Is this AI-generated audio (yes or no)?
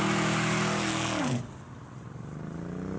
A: no